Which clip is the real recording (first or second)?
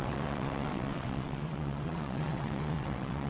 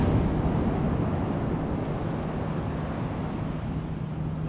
second